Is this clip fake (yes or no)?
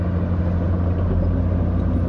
no